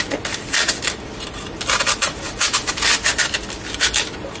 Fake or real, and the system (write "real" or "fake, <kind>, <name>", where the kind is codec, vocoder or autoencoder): real